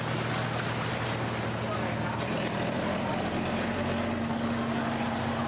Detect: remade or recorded recorded